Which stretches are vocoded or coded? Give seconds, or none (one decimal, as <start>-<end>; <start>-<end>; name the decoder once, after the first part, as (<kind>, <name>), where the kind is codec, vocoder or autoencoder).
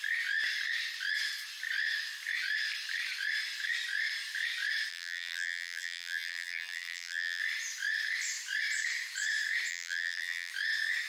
4.9-7.4 (vocoder, BigVGAN v2); 9.7-10.5